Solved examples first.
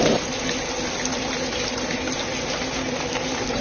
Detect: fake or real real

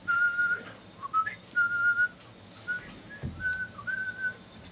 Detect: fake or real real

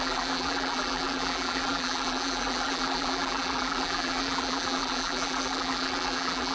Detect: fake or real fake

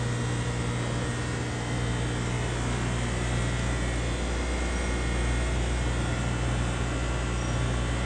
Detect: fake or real real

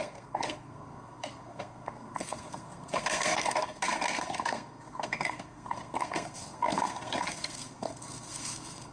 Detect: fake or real fake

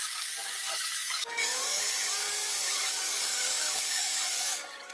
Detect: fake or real fake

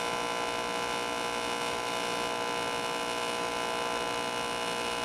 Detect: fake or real real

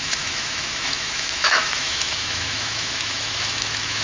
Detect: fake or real fake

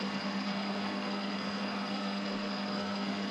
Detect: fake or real fake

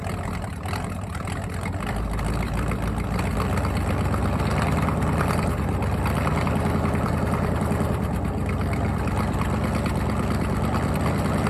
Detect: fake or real real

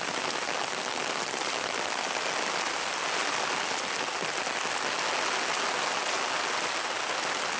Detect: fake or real real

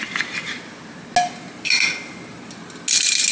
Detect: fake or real real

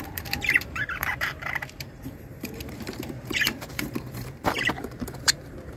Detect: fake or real fake